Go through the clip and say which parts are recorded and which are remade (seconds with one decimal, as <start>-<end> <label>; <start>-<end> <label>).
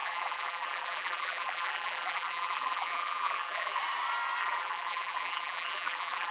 0.0-3.8 remade; 3.8-4.4 recorded; 4.4-6.3 remade